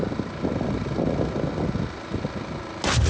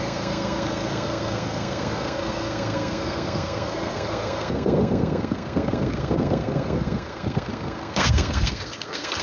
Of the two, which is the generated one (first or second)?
second